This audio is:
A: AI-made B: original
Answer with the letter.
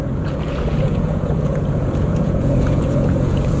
A